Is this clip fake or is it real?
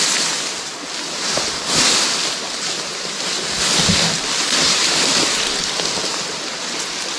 real